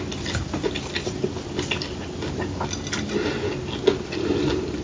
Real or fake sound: real